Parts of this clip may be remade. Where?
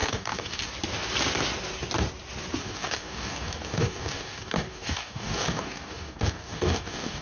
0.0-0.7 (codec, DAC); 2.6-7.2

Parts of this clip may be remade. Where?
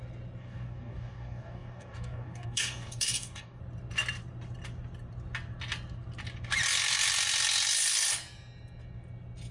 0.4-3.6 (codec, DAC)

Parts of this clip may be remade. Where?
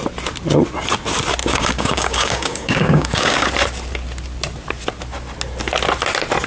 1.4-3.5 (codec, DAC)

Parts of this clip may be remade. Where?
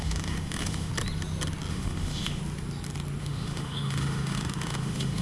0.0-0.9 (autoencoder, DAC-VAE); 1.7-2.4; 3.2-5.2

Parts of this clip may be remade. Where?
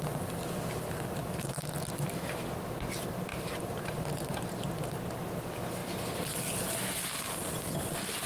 1.2-2.5 (vocoder, BigVGAN v2); 3.3-5.0